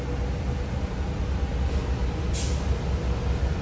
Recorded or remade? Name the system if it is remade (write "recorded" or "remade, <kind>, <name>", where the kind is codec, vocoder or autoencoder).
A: recorded